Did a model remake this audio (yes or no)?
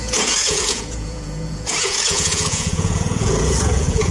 yes